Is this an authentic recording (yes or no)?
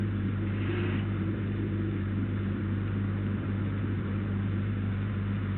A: no